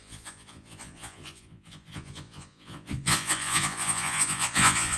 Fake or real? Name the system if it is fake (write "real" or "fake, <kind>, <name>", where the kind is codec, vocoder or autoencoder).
fake, vocoder, Vocos